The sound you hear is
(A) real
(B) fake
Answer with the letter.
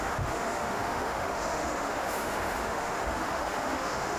B